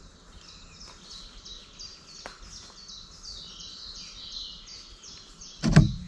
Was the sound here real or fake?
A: real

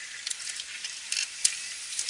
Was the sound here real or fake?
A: real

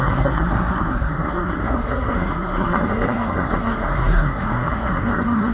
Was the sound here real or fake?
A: fake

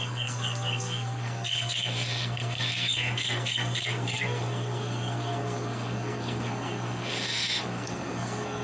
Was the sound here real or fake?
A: fake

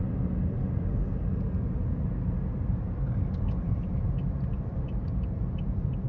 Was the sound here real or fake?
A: real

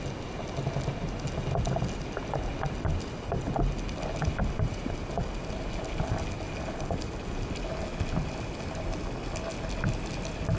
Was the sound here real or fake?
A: real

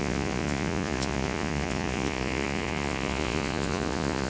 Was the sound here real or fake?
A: fake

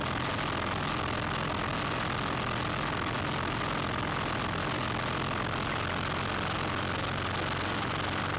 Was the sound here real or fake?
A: real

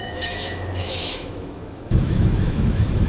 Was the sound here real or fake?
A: fake